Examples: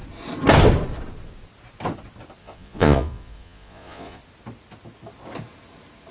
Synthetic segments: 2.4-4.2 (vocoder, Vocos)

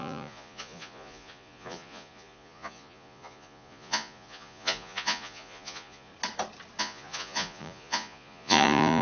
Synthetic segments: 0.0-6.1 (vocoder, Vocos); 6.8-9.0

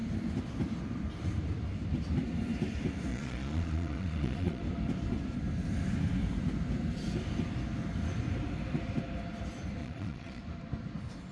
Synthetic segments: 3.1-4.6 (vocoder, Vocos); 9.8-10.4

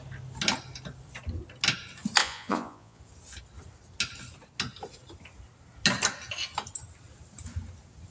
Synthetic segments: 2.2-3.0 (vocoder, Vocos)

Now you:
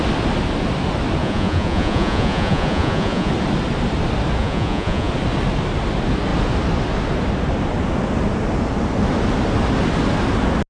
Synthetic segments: 1.2-3.3 (vocoder, Vocos); 4.4-5.1